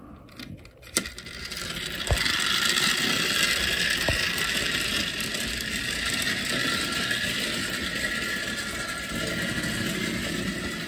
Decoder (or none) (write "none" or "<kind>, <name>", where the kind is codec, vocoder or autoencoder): none